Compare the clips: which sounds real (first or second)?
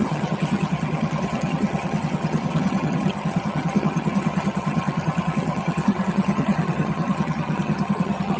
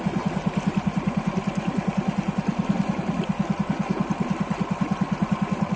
second